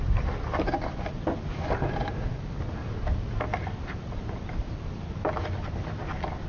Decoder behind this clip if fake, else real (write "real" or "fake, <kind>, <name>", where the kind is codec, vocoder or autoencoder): real